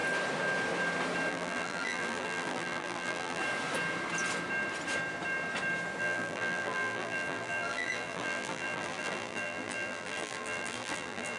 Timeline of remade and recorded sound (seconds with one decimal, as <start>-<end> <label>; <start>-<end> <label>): 0.0-1.3 recorded; 1.3-3.4 remade; 3.4-6.0 recorded; 6.0-11.4 remade

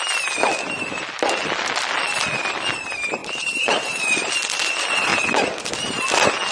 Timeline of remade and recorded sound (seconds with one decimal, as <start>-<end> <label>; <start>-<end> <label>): 0.0-3.2 recorded; 3.2-4.3 remade; 4.3-6.5 recorded

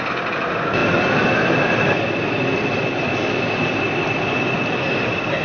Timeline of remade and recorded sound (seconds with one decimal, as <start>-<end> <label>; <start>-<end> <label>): 0.0-5.4 recorded

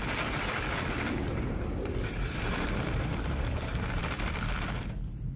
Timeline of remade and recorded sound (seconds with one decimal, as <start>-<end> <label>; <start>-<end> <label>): 0.0-1.3 recorded; 1.3-4.0 remade; 4.0-5.4 recorded

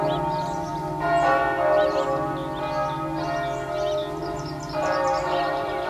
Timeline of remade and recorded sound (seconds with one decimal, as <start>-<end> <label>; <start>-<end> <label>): 0.0-0.7 remade; 0.7-4.2 recorded; 4.2-5.9 remade